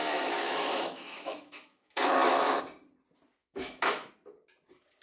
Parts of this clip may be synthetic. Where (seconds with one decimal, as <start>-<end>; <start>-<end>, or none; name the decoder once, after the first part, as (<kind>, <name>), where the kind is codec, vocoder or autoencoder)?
0.0-2.6 (autoencoder, DAC-VAE); 3.4-4.1